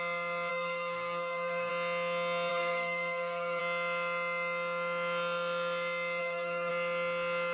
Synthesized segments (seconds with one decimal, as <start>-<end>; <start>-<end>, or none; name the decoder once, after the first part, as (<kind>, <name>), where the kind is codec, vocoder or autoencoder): 0.5-1.7 (codec, SNAC); 2.5-3.6; 6.2-6.7